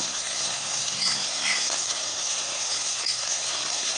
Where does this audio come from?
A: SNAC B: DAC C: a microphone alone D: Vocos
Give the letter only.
A